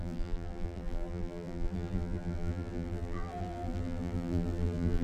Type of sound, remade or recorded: remade